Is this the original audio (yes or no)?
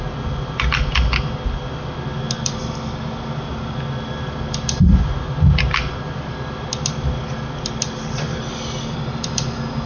yes